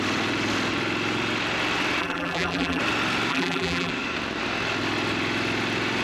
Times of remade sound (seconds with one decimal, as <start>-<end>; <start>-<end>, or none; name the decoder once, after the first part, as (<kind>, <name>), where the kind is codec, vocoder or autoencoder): 2.0-2.8 (vocoder, BigVGAN v2); 3.3-3.9